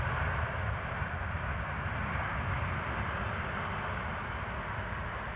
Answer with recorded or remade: recorded